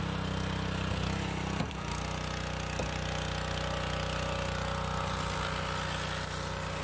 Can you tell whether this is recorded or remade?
recorded